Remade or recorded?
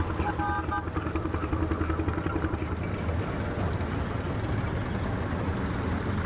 recorded